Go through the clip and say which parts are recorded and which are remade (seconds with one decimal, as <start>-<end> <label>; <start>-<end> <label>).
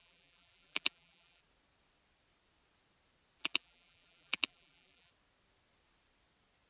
0.0-1.4 remade; 1.4-3.4 recorded; 3.4-5.1 remade; 5.1-6.7 recorded